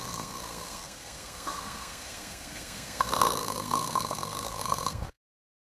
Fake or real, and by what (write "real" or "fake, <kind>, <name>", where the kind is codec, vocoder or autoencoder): fake, codec, SNAC